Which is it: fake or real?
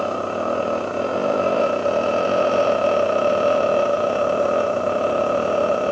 real